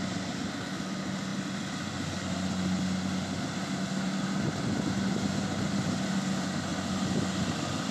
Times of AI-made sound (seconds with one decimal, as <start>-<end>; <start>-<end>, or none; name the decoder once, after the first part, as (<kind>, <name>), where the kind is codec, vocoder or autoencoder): none